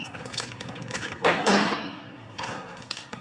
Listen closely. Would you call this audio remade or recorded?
remade